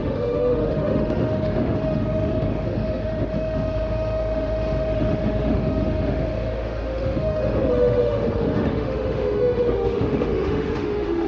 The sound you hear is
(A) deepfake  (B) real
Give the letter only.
A